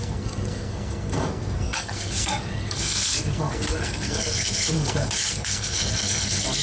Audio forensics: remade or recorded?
remade